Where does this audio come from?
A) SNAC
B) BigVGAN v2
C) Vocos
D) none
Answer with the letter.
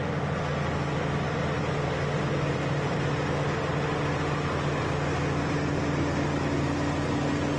D